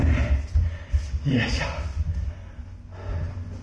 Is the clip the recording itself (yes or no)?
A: yes